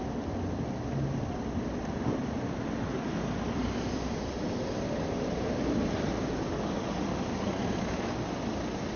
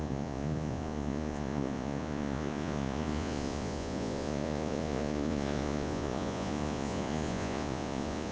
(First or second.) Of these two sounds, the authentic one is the first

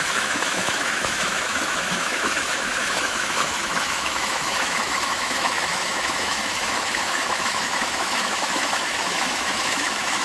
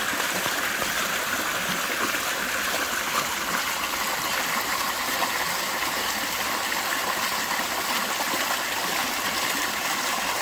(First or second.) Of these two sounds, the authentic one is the second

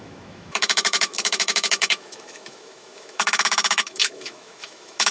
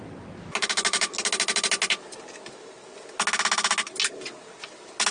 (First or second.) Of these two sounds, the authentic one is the second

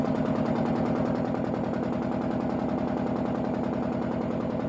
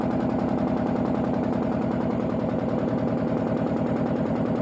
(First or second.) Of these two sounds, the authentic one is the first